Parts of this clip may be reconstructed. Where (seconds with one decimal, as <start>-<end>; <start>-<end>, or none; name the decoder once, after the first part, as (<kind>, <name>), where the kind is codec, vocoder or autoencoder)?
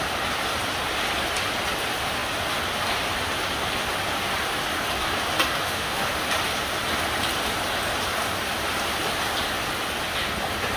5.6-6.1 (autoencoder, DAC-VAE)